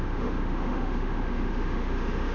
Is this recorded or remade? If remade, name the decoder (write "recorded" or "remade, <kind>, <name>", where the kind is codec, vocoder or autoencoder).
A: remade, autoencoder, DAC-VAE